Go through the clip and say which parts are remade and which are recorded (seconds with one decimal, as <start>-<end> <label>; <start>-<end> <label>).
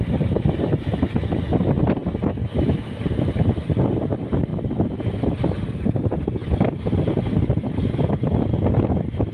0.0-9.3 recorded